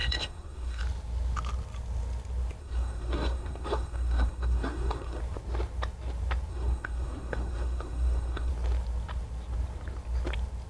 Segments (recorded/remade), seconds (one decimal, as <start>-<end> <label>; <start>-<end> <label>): 0.0-0.8 remade; 0.8-2.6 recorded; 2.6-5.2 remade; 5.2-6.5 recorded; 6.5-8.5 remade; 8.5-10.7 recorded